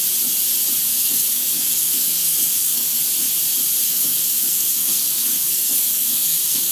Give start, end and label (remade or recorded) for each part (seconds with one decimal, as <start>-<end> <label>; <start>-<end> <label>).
0.0-0.9 recorded; 0.9-3.0 remade; 3.0-3.8 recorded; 3.8-6.7 remade